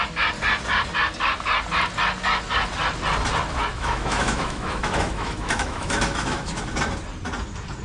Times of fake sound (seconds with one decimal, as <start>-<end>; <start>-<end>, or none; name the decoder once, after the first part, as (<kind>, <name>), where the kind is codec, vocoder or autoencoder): 3.7-6.6 (autoencoder, DAC-VAE)